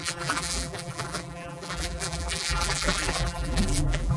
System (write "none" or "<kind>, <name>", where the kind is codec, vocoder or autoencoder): vocoder, BigVGAN v2